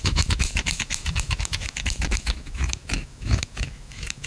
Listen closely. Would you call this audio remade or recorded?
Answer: remade